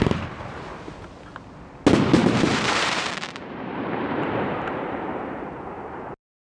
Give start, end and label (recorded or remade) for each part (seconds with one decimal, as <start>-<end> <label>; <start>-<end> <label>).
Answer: 0.0-2.2 recorded; 2.2-6.1 remade; 6.1-6.5 recorded